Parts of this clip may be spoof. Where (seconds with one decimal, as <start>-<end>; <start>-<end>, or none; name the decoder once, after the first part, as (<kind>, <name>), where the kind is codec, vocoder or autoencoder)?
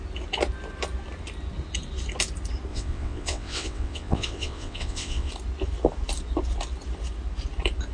2.7-5.3 (vocoder, WaveNeXt)